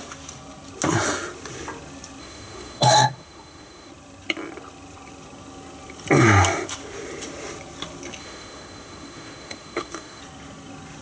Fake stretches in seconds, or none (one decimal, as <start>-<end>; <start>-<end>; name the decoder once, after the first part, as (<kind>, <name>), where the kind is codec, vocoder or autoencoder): 2.2-3.9 (autoencoder, DAC-VAE); 8.2-10.2